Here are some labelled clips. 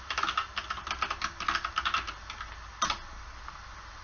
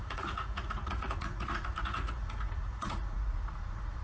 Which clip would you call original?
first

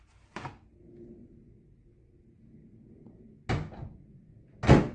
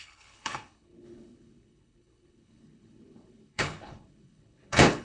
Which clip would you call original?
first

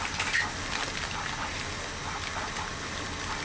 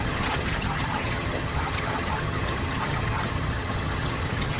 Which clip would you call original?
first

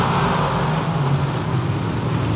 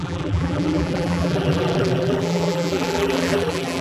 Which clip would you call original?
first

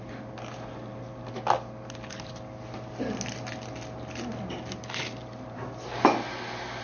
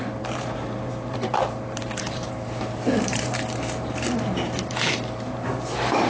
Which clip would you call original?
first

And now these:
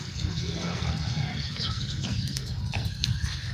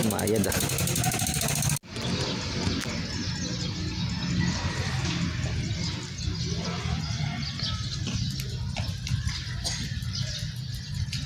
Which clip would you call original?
second